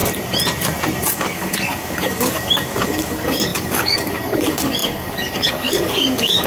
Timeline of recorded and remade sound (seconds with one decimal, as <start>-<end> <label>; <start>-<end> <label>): 0.0-1.1 recorded; 1.1-6.5 remade